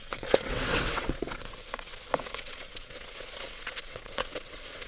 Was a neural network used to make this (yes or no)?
yes